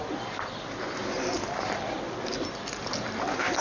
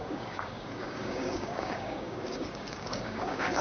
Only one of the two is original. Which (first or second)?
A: first